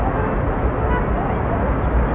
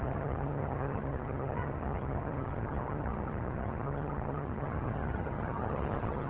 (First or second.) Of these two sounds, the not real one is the second